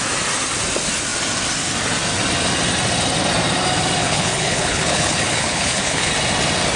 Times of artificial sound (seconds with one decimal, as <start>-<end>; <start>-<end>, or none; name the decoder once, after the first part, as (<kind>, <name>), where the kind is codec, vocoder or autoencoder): 4.0-6.1 (codec, HILCodec)